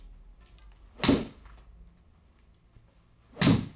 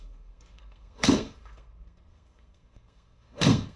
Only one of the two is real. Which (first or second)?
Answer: first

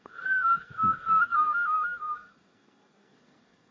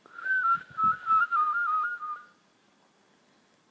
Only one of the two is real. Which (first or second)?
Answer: second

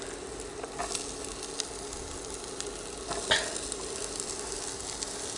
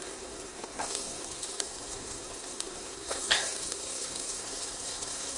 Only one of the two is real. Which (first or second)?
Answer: first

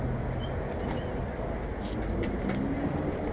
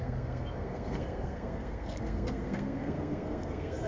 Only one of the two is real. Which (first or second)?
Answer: first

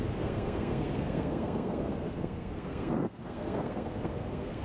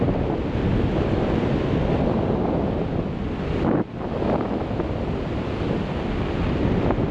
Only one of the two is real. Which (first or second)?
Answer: second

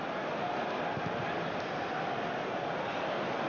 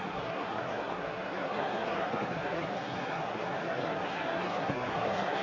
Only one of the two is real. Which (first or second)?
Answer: first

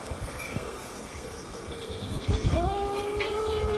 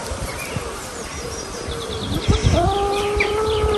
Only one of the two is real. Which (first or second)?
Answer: second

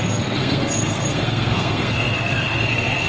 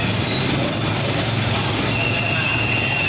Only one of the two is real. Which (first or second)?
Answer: second